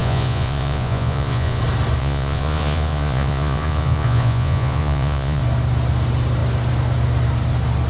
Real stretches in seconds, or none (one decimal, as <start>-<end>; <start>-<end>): 1.6-2.0; 5.4-7.9

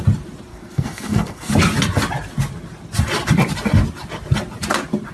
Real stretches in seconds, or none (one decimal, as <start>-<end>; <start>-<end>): 0.0-0.5; 1.5-5.1

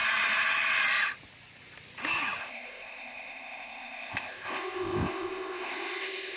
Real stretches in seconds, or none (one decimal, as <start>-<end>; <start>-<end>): 0.0-2.4

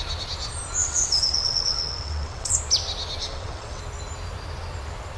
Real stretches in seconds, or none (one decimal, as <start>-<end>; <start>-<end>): 0.0-0.8; 2.6-3.2; 3.8-5.2

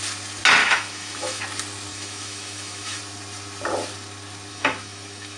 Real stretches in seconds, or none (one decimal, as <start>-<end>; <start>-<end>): 0.0-0.6; 1.4-1.9; 3.0-4.5

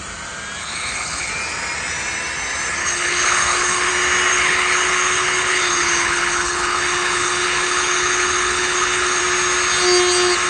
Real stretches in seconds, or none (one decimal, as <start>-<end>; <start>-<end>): 0.0-0.6; 1.3-2.8; 3.9-4.3; 9.2-10.5